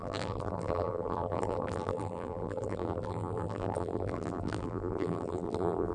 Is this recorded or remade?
remade